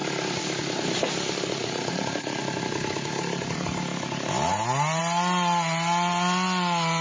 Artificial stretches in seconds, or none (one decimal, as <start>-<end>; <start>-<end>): 1.5-2.4